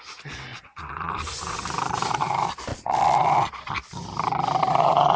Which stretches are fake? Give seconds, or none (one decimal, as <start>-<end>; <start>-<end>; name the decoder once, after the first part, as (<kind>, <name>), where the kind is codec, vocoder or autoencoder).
0.5-1.1 (vocoder, Vocos); 2.7-3.7